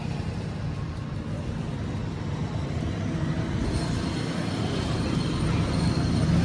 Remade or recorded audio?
recorded